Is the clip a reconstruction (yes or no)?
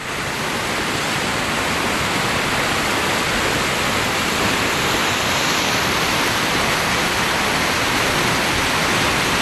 no